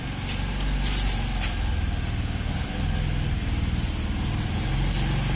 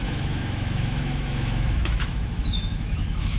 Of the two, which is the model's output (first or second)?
second